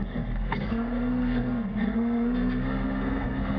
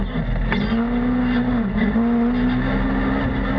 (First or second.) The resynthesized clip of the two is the first